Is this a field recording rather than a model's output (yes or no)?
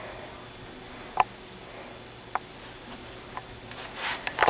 yes